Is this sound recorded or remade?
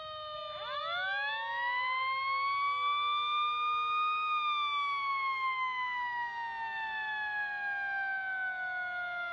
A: recorded